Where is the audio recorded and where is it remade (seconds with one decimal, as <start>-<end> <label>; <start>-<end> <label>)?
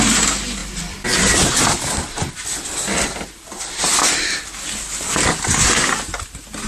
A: 0.0-6.7 recorded